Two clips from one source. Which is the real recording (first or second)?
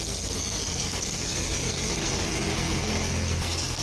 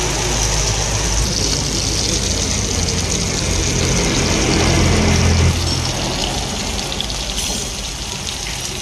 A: second